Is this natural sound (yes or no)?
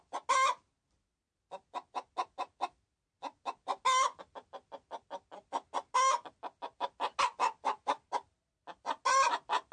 yes